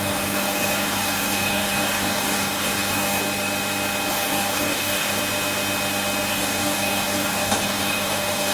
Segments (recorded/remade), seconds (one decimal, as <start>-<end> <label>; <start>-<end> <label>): 0.0-3.2 remade; 3.2-4.1 recorded; 4.1-5.2 remade; 5.2-6.3 recorded; 6.3-8.5 remade